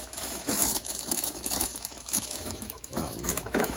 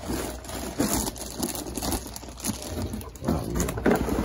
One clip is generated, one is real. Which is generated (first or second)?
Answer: first